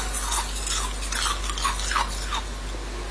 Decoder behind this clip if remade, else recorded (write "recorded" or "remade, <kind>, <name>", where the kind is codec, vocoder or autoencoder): recorded